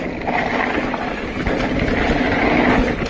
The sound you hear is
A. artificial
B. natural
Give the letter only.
B